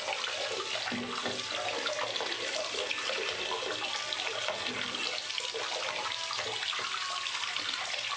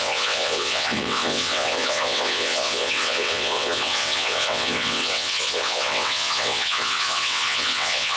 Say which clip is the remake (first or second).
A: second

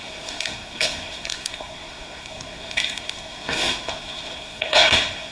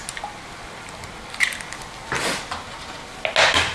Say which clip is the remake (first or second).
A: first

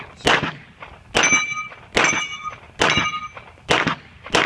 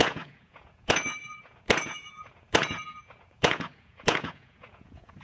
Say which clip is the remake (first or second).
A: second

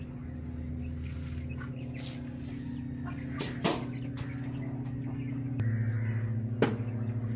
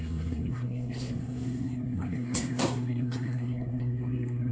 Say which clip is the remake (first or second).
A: second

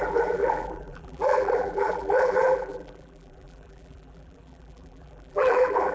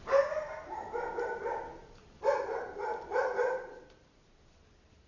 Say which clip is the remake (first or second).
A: first